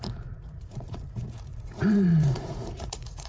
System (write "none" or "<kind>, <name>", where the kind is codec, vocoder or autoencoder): vocoder, Vocos